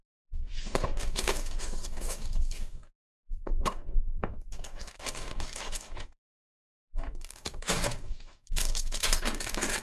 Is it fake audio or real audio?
fake